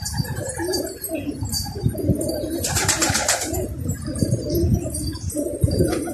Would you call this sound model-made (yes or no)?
yes